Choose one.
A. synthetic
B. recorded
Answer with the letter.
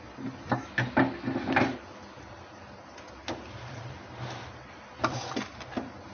B